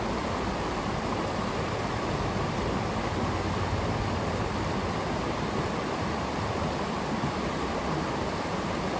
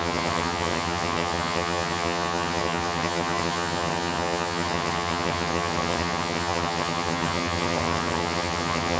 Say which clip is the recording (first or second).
first